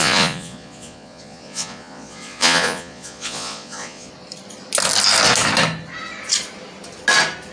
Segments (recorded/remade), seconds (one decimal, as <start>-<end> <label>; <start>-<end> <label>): 0.0-4.1 remade; 4.1-7.5 recorded